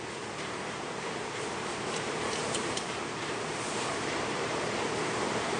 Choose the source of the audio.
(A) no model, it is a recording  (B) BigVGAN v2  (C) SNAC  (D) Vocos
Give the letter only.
B